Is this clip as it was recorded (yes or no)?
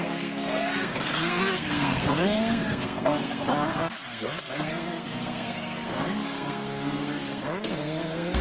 no